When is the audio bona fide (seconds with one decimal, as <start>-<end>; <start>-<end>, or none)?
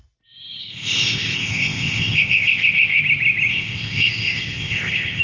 0.0-0.6; 3.0-3.5